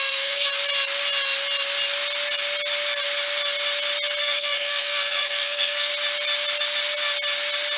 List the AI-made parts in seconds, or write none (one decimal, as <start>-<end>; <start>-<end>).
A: 0.0-0.5; 4.2-5.9